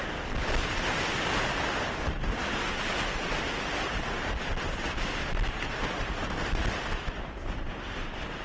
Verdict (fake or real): real